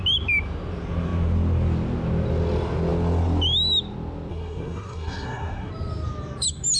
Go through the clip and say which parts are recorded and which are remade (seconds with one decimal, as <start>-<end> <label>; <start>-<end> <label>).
0.0-4.3 recorded; 4.3-5.7 remade; 5.7-6.8 recorded